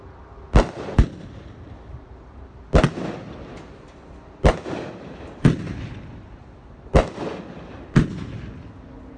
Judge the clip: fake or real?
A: real